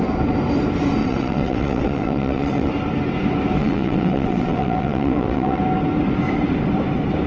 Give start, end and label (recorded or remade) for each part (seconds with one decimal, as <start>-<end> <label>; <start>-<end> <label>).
0.0-1.0 recorded; 1.0-2.7 remade; 2.7-3.6 recorded; 3.6-5.6 remade; 5.6-7.3 recorded